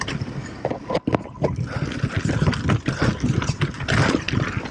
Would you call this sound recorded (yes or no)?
yes